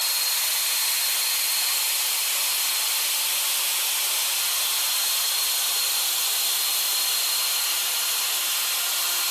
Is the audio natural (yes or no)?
yes